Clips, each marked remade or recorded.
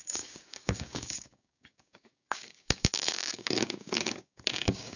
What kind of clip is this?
remade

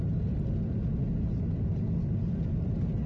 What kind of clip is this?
recorded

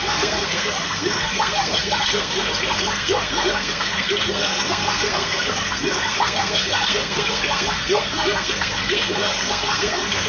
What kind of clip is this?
remade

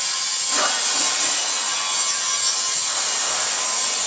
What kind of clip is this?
recorded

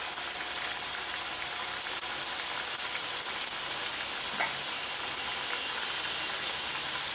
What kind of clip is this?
recorded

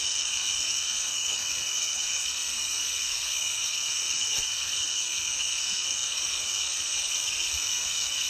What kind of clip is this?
remade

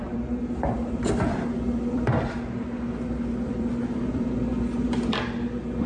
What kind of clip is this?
remade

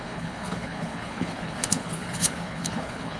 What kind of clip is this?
remade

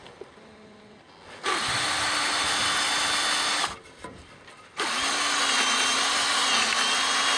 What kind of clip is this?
recorded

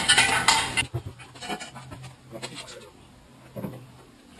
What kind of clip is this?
recorded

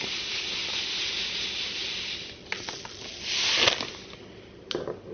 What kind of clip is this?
recorded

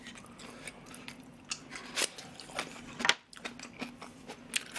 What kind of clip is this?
recorded